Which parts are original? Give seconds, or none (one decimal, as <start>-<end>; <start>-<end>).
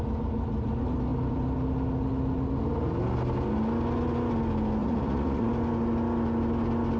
0.0-4.8; 5.5-7.0